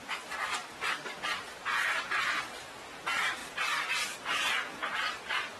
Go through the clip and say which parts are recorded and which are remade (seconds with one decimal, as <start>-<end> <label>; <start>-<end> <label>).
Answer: 0.0-5.6 recorded